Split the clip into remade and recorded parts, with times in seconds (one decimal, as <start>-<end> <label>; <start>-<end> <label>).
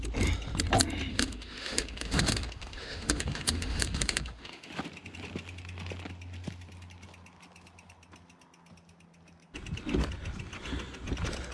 0.0-1.1 recorded; 1.1-4.7 remade; 4.7-11.5 recorded